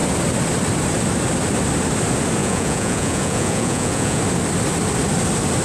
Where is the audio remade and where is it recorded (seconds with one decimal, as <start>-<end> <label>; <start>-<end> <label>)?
0.0-2.4 recorded; 2.4-4.2 remade; 4.2-5.6 recorded